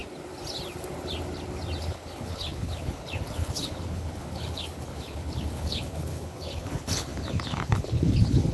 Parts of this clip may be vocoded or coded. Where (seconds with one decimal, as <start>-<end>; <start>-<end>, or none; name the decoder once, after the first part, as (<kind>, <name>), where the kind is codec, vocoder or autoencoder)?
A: 1.8-8.5 (codec, HILCodec)